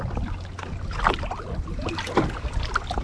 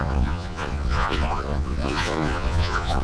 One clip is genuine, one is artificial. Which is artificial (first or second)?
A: second